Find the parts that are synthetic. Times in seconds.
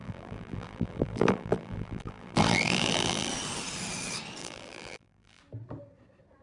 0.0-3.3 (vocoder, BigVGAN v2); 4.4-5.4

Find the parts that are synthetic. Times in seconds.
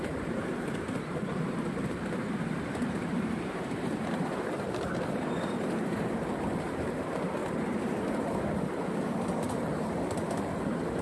0.0-7.4 (vocoder, BigVGAN v2); 8.7-11.0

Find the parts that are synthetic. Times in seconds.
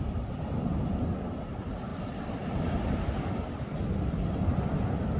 none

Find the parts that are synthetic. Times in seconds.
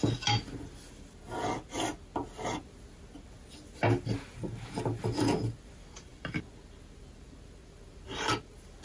none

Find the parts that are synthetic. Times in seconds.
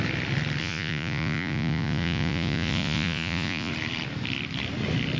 0.6-3.7 (vocoder, Vocos)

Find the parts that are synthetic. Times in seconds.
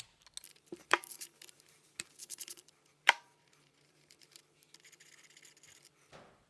0.5-4.4 (vocoder, BigVGAN v2)